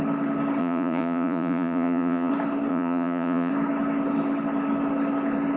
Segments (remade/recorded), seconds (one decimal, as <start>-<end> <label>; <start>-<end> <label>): 0.0-0.6 recorded; 0.6-2.3 remade; 2.3-2.7 recorded; 2.7-3.5 remade; 3.5-5.6 recorded